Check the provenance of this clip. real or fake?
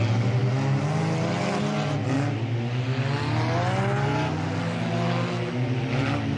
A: real